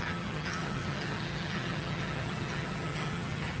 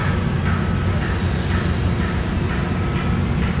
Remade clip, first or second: first